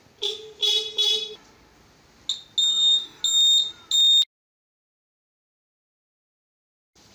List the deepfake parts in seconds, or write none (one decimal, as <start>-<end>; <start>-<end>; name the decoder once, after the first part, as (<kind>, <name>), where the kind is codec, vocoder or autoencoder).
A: 2.7-3.2 (autoencoder, DAC-VAE)